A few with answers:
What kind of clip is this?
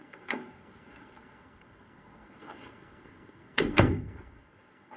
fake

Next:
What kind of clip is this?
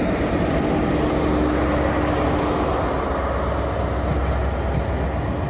real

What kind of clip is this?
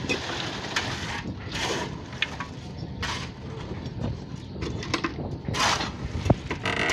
real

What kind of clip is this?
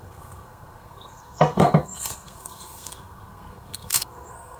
fake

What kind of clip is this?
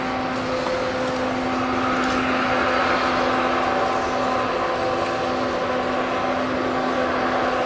real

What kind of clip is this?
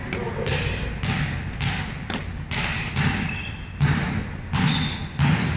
real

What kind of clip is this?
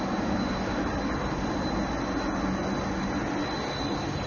real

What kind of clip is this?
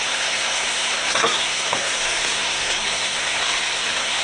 fake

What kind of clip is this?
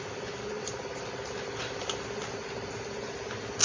real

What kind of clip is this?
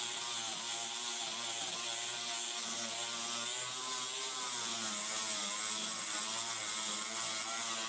real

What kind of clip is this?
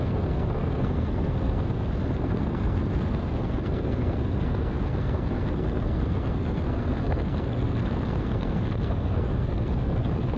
fake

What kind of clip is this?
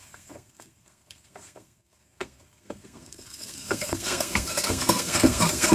fake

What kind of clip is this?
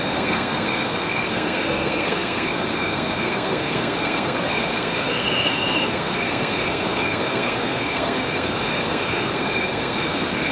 fake